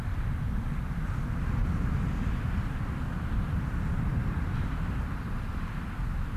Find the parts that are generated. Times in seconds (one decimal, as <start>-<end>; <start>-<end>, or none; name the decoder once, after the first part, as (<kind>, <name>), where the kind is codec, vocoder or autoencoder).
4.2-4.9 (vocoder, BigVGAN v2)